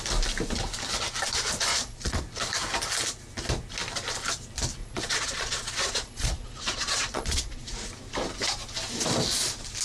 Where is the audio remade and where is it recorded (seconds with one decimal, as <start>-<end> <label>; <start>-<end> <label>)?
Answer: 0.0-1.7 recorded; 1.7-2.2 remade; 2.2-4.8 recorded; 4.8-7.9 remade; 7.9-9.8 recorded